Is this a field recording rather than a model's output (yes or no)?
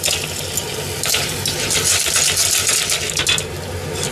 yes